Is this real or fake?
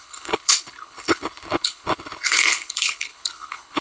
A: fake